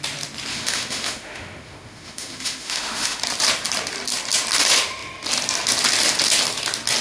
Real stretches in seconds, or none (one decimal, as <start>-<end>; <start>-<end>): 0.0-0.5; 3.2-7.0